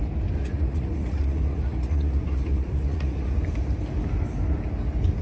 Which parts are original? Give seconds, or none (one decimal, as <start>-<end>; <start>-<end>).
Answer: 0.0-0.4; 3.4-5.2